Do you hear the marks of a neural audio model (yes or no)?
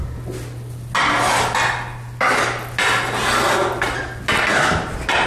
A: no